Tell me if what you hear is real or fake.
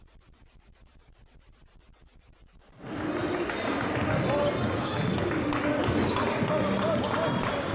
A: real